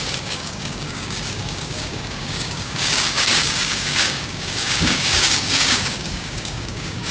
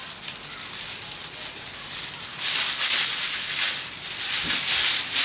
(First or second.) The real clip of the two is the second